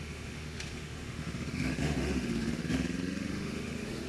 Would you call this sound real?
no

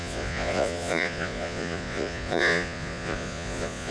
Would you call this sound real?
no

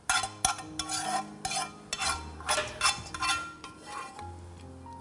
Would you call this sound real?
yes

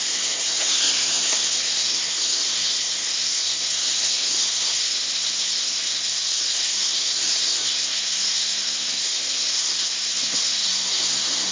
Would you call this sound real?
no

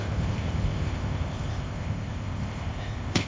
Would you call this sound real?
no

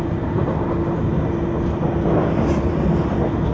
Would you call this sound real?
yes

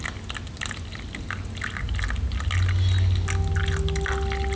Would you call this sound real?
yes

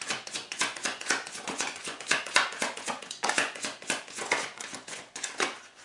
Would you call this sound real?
no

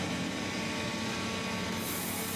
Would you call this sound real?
yes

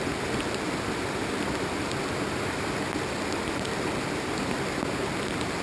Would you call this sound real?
yes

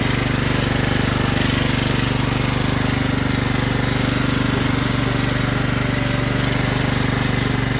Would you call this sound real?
yes